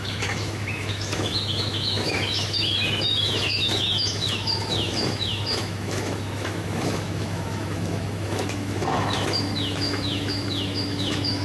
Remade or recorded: remade